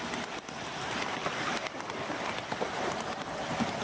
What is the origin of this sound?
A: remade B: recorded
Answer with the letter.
B